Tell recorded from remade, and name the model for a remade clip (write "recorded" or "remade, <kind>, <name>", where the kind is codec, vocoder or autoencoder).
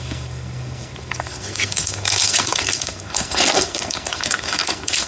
remade, codec, SNAC